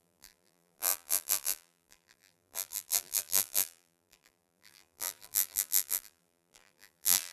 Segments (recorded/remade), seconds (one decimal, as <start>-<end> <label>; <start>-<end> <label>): 0.0-7.3 remade